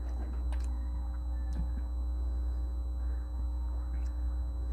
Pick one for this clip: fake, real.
real